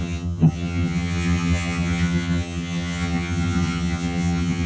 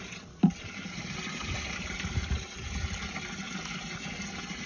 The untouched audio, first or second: second